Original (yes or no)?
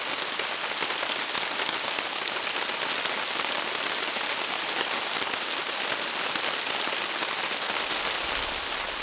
yes